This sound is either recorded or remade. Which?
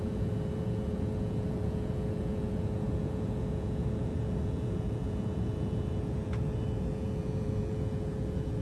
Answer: remade